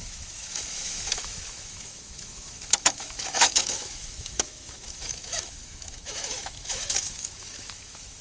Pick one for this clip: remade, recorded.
remade